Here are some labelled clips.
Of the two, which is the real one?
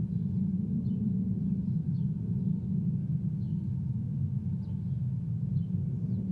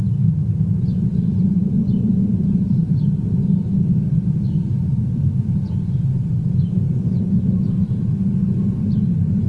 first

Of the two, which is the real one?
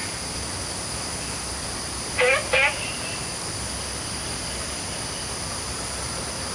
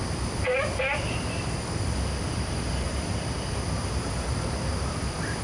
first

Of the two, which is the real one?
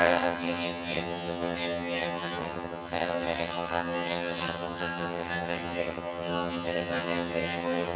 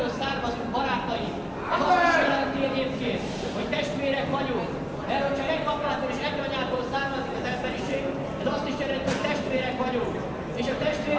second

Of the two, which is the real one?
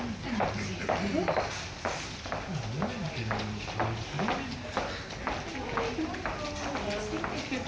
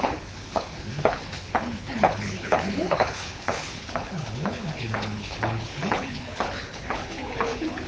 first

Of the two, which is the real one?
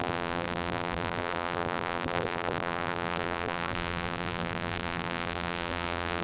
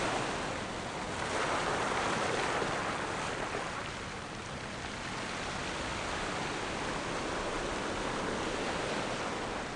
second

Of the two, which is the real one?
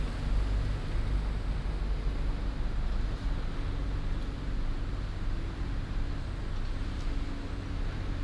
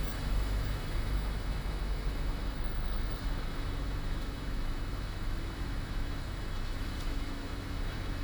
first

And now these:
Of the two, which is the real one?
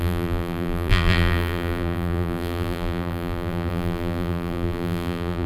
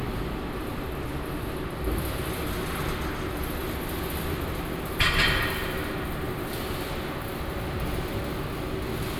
second